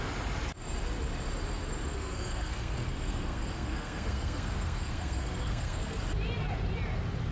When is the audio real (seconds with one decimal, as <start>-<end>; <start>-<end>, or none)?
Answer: 0.0-1.9; 6.0-7.3